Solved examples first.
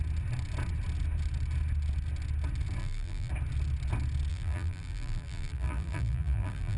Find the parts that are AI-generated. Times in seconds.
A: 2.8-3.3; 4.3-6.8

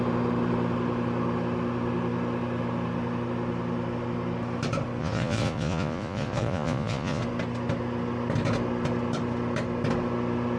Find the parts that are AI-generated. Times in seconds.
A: 5.0-7.2

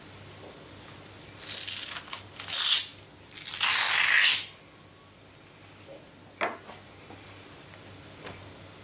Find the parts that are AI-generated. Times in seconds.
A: none

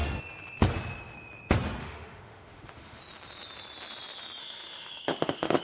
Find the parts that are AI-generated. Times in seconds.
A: 1.8-3.0; 4.4-5.6

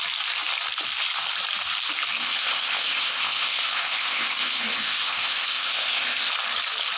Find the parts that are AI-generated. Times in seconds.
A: 2.2-6.3

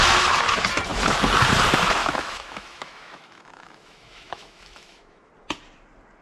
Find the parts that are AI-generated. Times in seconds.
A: 2.0-5.3

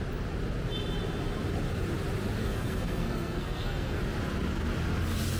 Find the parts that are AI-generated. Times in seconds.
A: 2.4-4.0